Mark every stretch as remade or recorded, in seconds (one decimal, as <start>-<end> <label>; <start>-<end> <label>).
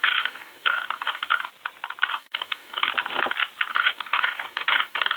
0.0-1.5 remade; 1.5-2.1 recorded; 2.1-2.9 remade; 2.9-3.7 recorded; 3.7-5.2 remade